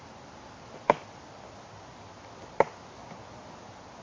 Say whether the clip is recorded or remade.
recorded